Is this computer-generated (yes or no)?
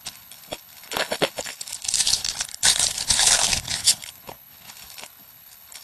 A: yes